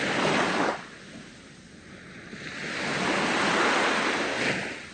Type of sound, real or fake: real